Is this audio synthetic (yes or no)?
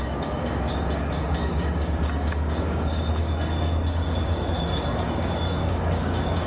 yes